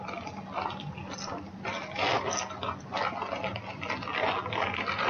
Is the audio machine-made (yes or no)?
no